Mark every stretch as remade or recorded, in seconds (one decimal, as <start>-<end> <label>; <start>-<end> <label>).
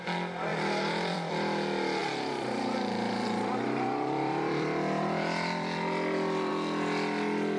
0.0-0.5 recorded; 0.5-1.3 remade; 1.3-2.0 recorded; 2.0-6.5 remade; 6.5-7.6 recorded